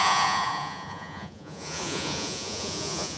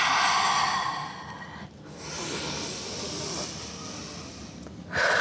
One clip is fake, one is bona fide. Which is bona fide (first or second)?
second